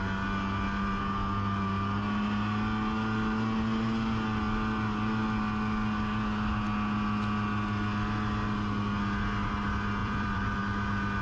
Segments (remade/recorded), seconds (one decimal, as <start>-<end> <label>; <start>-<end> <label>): 0.0-10.0 recorded; 10.0-10.6 remade; 10.6-11.2 recorded